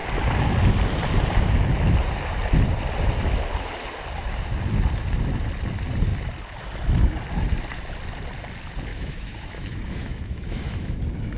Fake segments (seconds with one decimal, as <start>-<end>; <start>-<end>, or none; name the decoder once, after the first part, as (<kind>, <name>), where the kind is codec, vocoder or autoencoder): 8.9-11.0 (autoencoder, DAC-VAE)